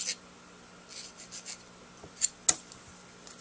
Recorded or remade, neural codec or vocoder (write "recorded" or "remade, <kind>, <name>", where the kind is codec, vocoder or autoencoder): recorded